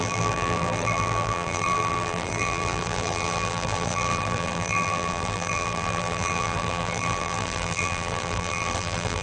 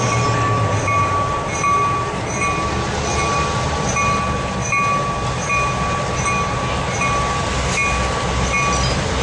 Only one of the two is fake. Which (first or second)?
first